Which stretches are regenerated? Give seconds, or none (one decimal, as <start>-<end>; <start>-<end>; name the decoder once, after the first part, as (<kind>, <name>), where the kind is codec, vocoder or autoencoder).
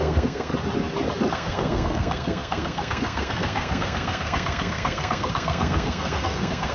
0.0-0.5 (codec, SNAC); 1.3-6.7